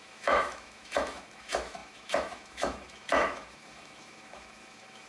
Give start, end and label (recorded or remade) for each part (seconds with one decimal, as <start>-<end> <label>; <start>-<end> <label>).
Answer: 0.0-5.1 remade